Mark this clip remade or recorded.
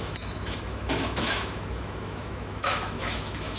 remade